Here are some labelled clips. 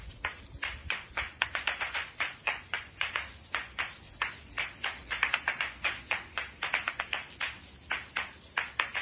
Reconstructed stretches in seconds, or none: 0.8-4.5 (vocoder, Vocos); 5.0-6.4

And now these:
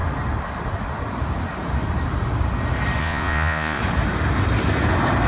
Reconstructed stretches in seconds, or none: 3.0-3.8 (vocoder, Vocos)

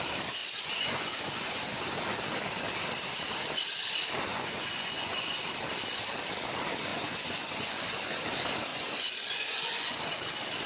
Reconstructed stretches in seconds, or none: 0.4-2.0 (vocoder, Vocos); 4.3-5.4; 6.9-8.2; 8.7-10.0

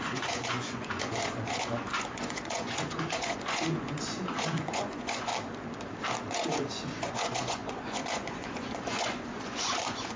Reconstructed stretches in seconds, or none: 0.0-5.3 (vocoder, Vocos); 6.3-10.2

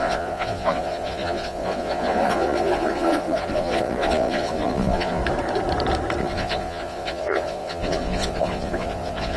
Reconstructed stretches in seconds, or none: 0.0-5.2 (vocoder, Vocos); 6.2-9.4